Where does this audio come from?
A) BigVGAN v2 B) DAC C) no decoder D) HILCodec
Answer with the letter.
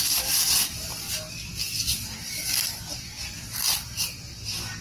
A